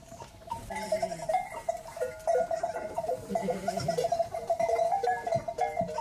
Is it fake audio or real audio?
fake